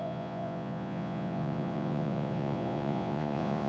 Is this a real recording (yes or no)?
no